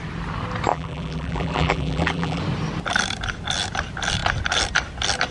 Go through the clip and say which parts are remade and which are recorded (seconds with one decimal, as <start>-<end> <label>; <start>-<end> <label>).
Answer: 0.0-0.7 recorded; 0.7-2.4 remade; 2.4-5.3 recorded